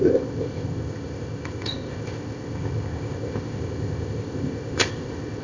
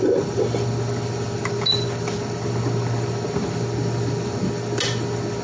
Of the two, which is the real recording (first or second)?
second